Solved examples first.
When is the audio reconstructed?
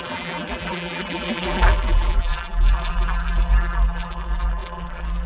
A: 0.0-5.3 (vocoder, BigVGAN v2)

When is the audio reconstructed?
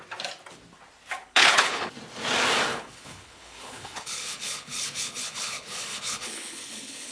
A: 1.2-1.9 (codec, HILCodec); 2.7-7.1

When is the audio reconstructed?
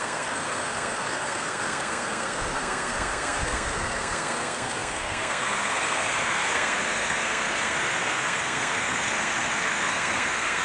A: 0.0-10.6 (codec, SNAC)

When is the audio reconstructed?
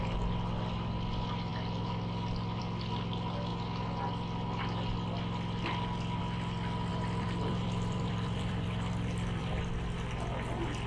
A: 6.9-9.6 (vocoder, BigVGAN v2)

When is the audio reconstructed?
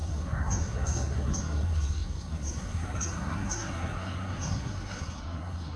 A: 0.0-5.8 (codec, SNAC)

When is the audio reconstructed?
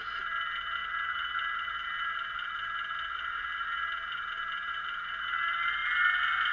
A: none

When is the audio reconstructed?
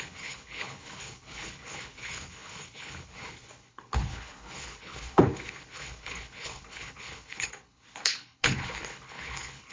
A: 0.0-9.7 (codec, HILCodec)